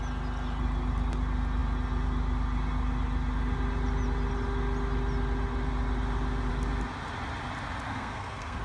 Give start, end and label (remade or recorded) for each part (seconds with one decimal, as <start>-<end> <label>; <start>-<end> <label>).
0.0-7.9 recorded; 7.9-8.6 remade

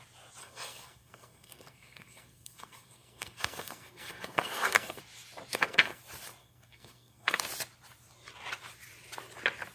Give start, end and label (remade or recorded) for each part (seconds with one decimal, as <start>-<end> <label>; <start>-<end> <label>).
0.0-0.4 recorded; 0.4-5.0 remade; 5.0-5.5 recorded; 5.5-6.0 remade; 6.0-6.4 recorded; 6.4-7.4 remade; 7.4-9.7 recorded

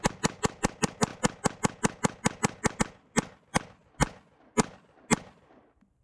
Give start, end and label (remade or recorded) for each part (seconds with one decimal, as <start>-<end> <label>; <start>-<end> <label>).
0.0-6.0 recorded

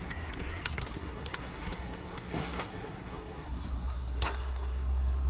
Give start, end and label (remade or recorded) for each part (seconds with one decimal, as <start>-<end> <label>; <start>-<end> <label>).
0.0-5.3 remade

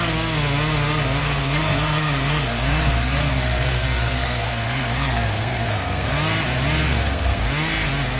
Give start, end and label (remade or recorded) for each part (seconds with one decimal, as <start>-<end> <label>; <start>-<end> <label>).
0.0-1.2 recorded; 1.2-6.1 remade; 6.1-6.9 recorded; 6.9-7.4 remade; 7.4-8.2 recorded

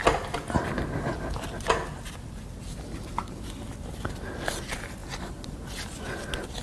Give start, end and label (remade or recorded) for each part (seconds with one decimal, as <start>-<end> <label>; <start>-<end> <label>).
0.0-6.6 recorded